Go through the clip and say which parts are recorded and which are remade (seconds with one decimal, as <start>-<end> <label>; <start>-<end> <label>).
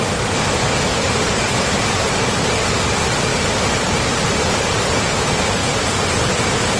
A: 0.0-0.9 recorded; 0.9-2.5 remade; 2.5-3.3 recorded; 3.3-3.9 remade; 3.9-6.8 recorded